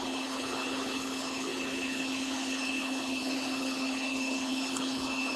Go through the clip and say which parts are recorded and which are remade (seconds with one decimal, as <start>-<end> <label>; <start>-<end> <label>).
0.0-5.4 remade